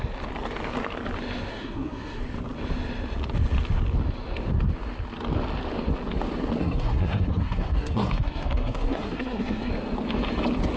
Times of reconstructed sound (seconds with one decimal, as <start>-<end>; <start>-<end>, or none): 1.5-2.2; 6.6-9.7